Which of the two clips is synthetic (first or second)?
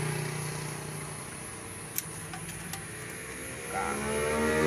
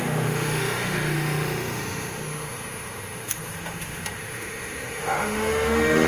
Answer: second